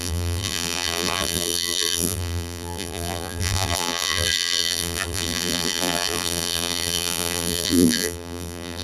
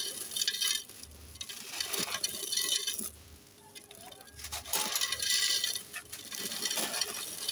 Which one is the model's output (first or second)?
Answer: first